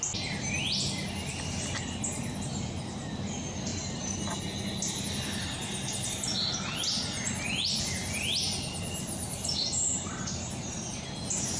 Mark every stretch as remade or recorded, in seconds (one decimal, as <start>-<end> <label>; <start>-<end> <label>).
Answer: 0.0-11.6 recorded

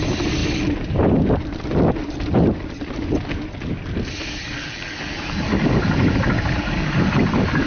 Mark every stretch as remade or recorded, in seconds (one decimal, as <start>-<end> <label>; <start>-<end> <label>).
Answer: 0.0-7.7 recorded

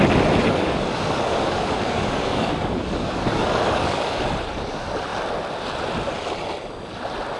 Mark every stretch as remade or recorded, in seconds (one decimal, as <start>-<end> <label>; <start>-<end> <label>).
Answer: 0.0-0.4 recorded; 0.4-4.3 remade; 4.3-7.4 recorded